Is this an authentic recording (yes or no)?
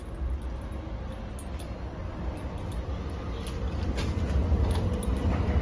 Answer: yes